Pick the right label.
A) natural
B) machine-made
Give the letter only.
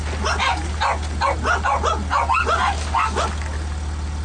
A